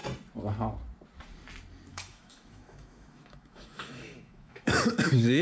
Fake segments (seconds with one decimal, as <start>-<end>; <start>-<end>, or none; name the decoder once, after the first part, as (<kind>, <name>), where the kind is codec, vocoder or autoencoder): 1.9-5.4 (autoencoder, DAC-VAE)